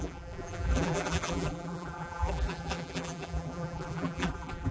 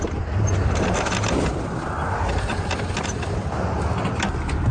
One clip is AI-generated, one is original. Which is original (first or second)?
second